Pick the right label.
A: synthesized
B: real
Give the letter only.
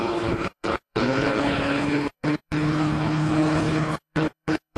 A